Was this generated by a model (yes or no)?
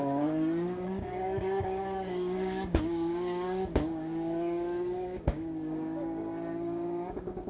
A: yes